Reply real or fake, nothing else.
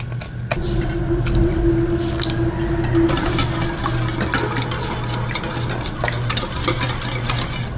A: real